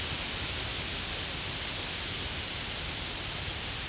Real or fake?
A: real